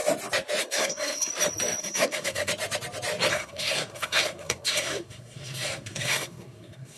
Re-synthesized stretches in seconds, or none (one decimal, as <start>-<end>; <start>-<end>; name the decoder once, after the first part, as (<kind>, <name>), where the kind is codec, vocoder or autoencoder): 0.6-1.3 (codec, SNAC); 1.8-2.5; 3.3-7.0